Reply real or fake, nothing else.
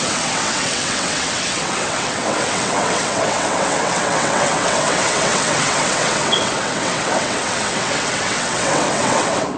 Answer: fake